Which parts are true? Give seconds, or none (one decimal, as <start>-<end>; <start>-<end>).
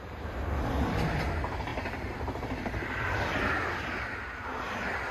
1.7-5.1